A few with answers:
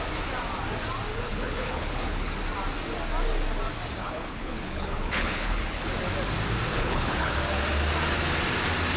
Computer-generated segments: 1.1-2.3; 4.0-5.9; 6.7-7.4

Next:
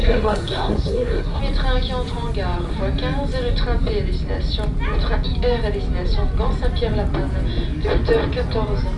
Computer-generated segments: 0.0-1.4

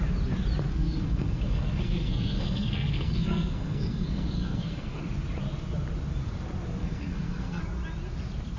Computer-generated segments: 0.7-5.0; 6.8-7.6